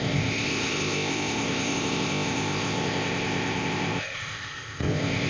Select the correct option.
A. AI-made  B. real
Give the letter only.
A